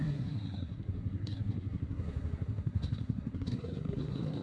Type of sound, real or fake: fake